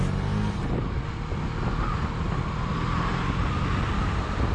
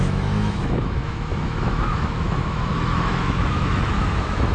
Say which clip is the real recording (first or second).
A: first